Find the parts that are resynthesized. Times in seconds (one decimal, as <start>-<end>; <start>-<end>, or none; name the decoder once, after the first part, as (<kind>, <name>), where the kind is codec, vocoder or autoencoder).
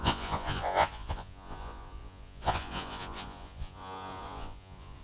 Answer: 0.0-5.0 (vocoder, Vocos)